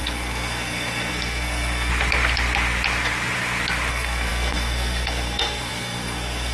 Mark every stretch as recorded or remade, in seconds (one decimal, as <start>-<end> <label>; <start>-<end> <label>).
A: 0.0-1.9 remade; 1.9-3.9 recorded; 3.9-6.5 remade